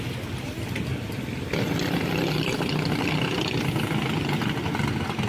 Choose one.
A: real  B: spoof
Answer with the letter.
A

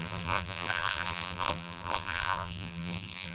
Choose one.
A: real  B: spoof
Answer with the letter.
B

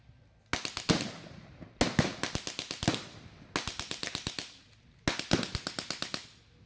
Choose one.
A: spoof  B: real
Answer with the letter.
B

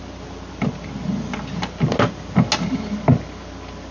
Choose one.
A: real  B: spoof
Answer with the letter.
A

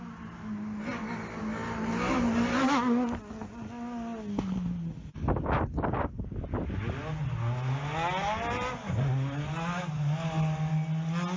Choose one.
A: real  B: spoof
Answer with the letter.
A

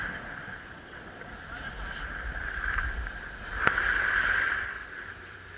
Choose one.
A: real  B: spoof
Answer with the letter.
B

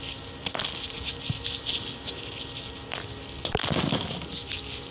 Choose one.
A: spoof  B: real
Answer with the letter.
B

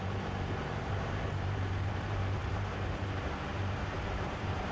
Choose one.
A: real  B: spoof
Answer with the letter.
B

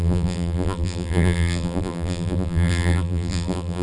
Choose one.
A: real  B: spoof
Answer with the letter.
B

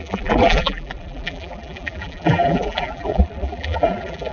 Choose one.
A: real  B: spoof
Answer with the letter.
B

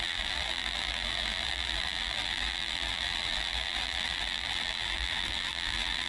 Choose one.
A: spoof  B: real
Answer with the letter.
A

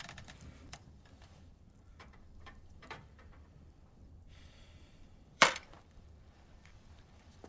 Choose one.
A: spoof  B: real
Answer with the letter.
A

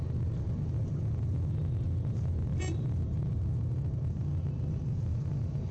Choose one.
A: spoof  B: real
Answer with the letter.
B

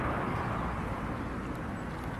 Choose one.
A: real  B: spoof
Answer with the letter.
A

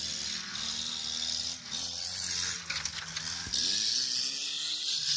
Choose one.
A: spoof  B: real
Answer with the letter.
B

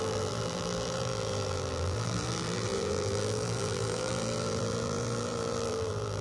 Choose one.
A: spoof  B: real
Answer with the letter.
A